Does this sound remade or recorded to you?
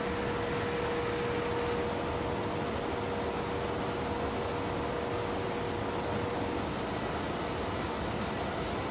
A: recorded